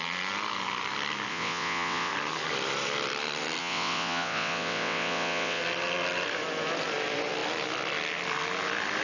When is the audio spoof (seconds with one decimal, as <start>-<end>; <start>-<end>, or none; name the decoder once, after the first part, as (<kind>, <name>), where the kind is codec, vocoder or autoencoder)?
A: 1.3-2.1 (vocoder, WaveNeXt); 3.6-5.6